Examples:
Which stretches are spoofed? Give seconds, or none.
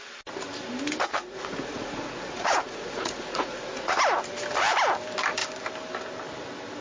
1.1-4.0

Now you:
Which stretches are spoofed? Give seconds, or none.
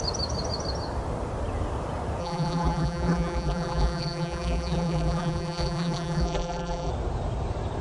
2.2-6.9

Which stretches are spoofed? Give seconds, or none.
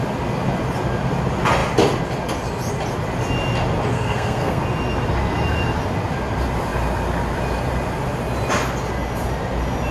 3.9-4.6